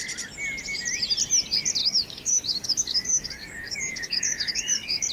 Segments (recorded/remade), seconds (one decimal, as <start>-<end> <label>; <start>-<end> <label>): 0.0-1.8 recorded; 1.8-5.1 remade